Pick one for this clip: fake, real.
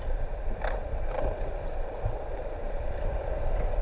real